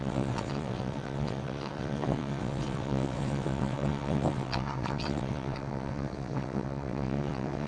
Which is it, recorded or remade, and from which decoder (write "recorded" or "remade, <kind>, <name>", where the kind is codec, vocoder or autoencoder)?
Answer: remade, vocoder, WaveNeXt